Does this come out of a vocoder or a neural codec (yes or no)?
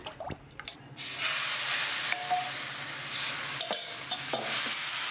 no